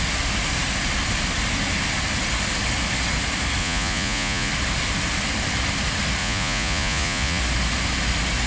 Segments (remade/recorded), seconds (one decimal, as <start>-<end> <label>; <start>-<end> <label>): 0.0-3.6 recorded; 3.6-4.5 remade; 4.5-6.2 recorded; 6.2-7.4 remade; 7.4-8.5 recorded